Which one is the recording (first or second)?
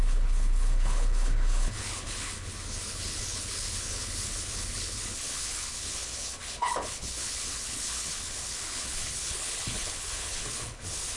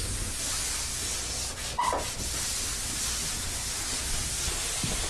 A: second